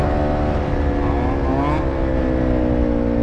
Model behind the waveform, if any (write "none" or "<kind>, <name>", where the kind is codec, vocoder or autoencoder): none